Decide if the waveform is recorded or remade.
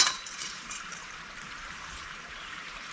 remade